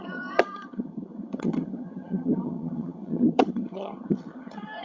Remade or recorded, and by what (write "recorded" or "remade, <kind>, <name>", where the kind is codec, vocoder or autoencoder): remade, vocoder, HiFi-GAN